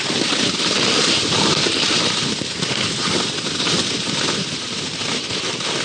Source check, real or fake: real